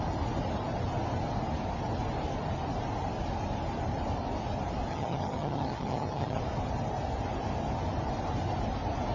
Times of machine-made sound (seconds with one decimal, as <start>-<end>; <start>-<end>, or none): 4.9-6.4